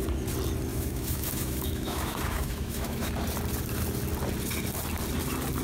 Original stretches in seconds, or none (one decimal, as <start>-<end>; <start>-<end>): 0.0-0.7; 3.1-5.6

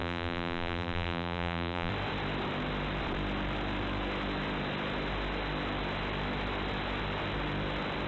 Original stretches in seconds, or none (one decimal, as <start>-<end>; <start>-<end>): 1.9-8.1

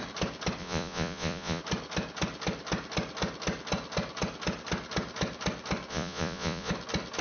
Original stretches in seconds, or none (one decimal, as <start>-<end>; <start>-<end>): 0.0-0.6; 1.6-5.9; 6.7-7.2

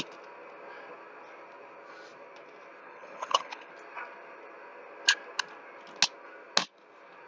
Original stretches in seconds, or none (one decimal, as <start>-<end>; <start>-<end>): 0.0-2.8; 3.7-7.3

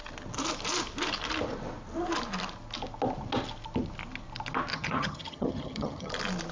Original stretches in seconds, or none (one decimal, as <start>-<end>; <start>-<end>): 0.0-4.7; 6.1-6.5